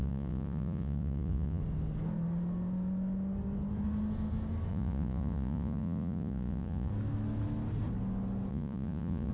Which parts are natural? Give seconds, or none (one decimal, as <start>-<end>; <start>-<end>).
1.6-4.7; 6.9-8.5

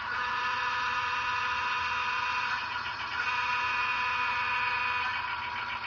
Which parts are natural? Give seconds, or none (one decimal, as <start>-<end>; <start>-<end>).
4.8-5.9

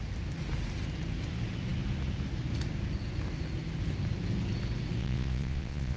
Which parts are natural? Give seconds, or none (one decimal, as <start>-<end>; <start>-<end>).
0.0-5.0

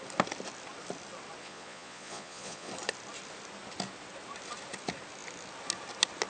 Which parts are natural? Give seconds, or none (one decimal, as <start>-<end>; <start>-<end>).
0.0-1.4; 2.7-6.3

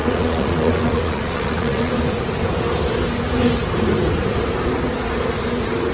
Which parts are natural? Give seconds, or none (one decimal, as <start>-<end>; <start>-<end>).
1.9-5.9

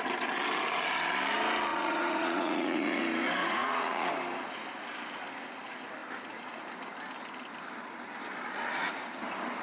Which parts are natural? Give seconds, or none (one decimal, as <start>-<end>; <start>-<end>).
0.0-1.7; 3.0-3.4; 4.1-9.6